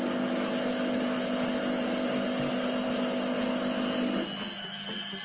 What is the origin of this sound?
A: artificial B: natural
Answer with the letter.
B